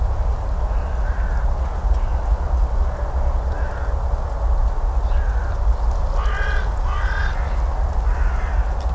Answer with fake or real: real